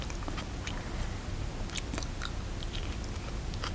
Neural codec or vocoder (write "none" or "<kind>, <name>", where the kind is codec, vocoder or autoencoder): none